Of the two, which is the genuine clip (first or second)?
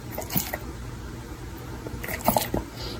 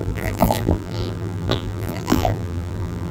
first